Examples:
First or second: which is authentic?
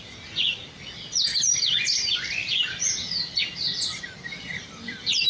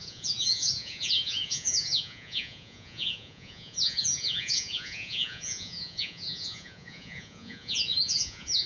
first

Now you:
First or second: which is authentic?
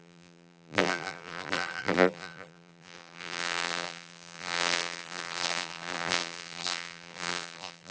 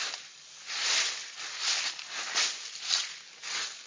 second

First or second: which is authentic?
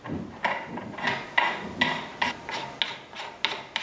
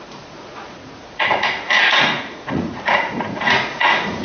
first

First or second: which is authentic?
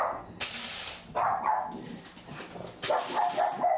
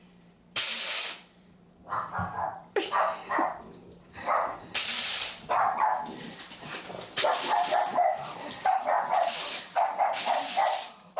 first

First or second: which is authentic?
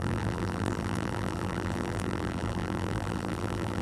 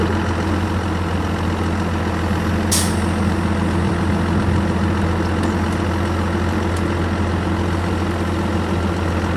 second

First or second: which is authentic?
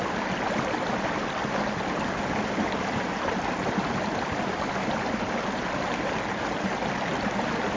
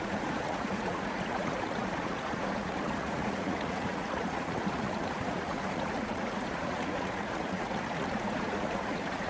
first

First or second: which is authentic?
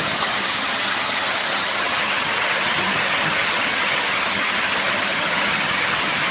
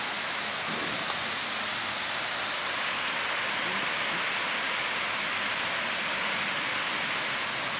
second